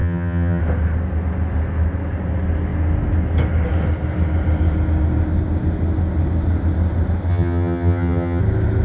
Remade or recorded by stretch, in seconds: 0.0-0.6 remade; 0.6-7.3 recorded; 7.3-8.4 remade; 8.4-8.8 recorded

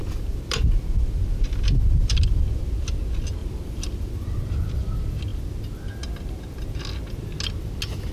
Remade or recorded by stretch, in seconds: 0.0-2.6 remade; 2.6-3.4 recorded; 3.4-4.4 remade; 4.4-8.1 recorded